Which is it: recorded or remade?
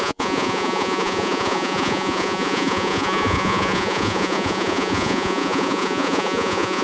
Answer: remade